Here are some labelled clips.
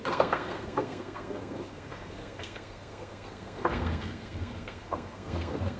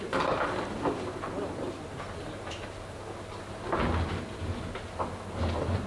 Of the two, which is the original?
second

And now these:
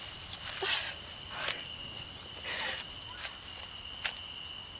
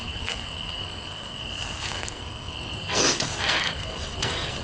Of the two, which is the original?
first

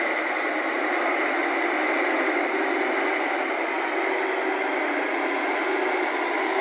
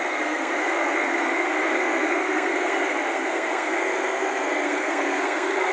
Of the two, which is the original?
first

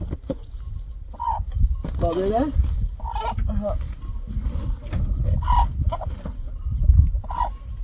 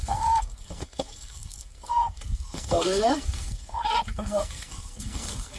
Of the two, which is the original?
first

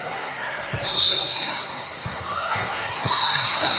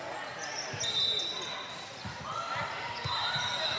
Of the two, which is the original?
second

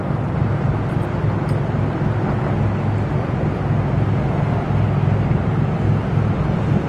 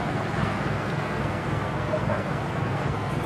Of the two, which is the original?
first